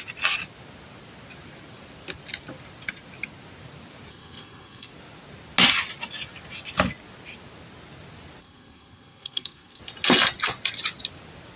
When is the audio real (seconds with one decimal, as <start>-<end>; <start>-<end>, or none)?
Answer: 0.0-4.1; 4.9-8.4; 9.8-11.6